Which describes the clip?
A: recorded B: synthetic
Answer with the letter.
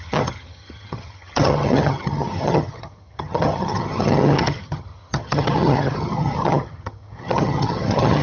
B